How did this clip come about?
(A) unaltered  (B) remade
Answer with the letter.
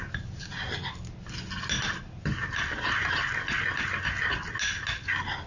A